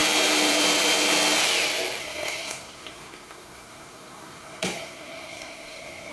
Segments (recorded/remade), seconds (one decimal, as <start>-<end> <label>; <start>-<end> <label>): 0.0-2.0 recorded; 2.0-6.1 remade